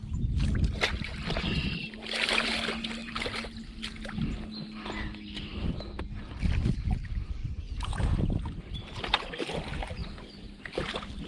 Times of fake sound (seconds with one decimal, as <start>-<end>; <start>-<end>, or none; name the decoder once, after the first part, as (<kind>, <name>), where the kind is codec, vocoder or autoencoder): none